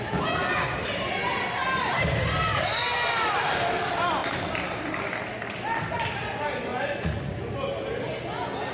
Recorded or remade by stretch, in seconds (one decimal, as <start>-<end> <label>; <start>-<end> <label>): 0.0-6.7 recorded; 6.7-7.3 remade; 7.3-8.7 recorded